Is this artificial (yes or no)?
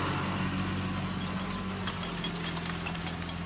no